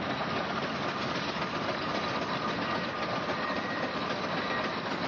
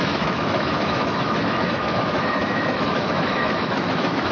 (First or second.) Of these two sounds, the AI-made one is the second